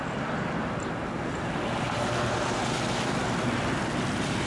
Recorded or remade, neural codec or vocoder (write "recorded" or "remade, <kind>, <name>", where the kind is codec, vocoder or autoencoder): recorded